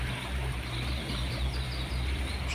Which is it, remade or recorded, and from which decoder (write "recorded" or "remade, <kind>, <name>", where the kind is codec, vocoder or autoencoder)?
recorded